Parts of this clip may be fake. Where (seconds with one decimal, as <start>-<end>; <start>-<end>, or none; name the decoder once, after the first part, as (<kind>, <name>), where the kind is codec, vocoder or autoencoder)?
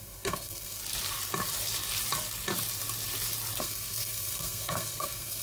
0.0-0.8 (codec, SNAC); 3.6-5.4